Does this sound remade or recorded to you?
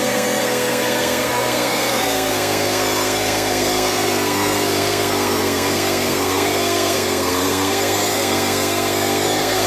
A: remade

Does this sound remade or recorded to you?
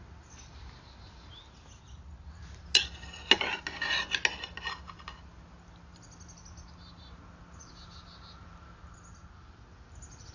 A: recorded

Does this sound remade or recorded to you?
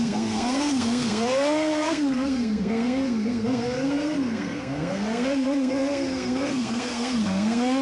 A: remade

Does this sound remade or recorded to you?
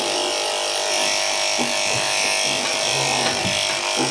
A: recorded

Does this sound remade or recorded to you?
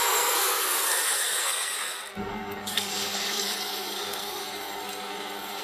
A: remade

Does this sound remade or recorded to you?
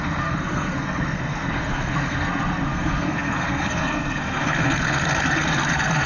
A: remade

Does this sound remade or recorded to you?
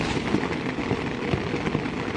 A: recorded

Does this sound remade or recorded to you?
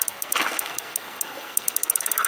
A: remade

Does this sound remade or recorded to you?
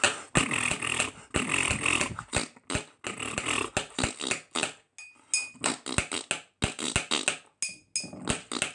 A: recorded